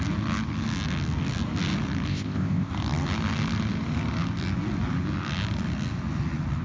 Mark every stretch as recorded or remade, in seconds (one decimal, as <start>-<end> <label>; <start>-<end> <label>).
0.0-2.1 recorded; 2.1-2.7 remade; 2.7-6.6 recorded